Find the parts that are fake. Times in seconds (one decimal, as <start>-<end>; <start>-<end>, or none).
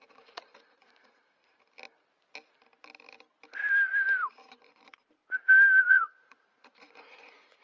0.0-1.4; 4.5-5.2; 5.8-7.6